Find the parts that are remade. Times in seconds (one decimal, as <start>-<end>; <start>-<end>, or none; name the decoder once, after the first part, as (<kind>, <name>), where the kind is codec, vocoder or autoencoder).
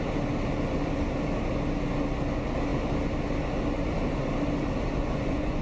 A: 5.0-5.6 (vocoder, Vocos)